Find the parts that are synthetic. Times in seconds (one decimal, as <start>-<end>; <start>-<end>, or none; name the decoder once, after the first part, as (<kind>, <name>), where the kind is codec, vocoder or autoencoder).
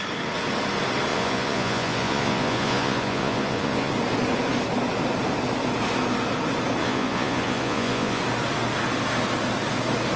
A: 1.1-3.9 (vocoder, Vocos); 6.8-8.2